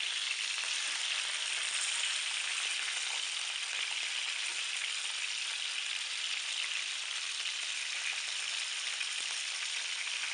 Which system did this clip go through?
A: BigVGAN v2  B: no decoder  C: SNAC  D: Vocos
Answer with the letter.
B